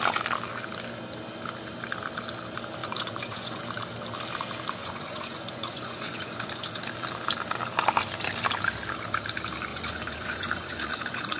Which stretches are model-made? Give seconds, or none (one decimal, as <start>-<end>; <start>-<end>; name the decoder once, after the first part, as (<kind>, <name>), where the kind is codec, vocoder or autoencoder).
2.8-3.6 (vocoder, Vocos); 4.8-6.8; 9.7-11.4